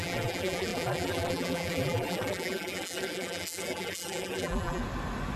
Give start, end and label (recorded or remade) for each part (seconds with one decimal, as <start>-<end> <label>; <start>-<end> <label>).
0.0-4.8 remade; 4.8-5.4 recorded